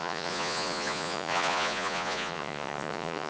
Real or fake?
fake